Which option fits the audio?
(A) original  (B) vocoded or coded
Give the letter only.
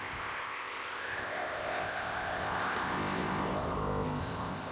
B